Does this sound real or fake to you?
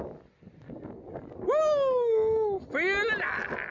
real